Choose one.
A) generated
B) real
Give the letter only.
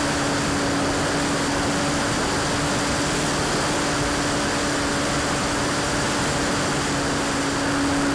B